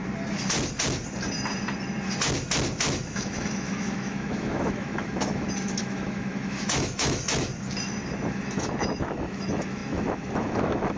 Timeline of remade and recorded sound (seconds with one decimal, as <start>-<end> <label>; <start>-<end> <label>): 0.0-2.9 recorded; 2.9-7.5 remade; 7.5-8.3 recorded; 8.3-11.0 remade